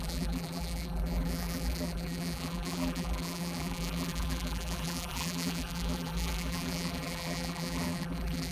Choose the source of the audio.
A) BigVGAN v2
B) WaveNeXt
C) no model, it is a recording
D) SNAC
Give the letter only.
A